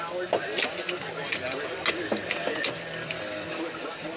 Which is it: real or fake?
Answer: real